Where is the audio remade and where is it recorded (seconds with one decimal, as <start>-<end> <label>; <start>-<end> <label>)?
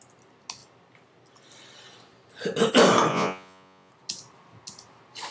0.0-3.1 recorded; 3.1-3.9 remade; 3.9-5.3 recorded